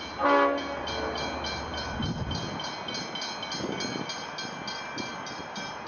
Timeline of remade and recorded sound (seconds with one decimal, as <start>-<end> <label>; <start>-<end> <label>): 0.0-5.1 recorded; 5.1-5.9 remade